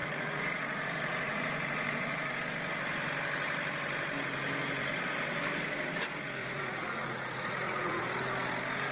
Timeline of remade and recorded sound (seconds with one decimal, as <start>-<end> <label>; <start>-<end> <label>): 0.0-2.4 remade; 2.4-6.4 recorded; 6.4-8.0 remade; 8.0-8.9 recorded